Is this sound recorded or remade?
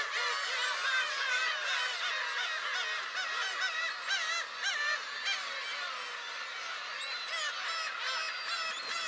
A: recorded